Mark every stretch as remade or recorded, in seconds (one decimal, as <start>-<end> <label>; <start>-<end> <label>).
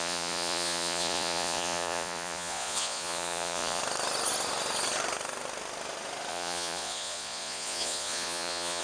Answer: 0.0-3.8 remade; 3.8-6.3 recorded; 6.3-8.8 remade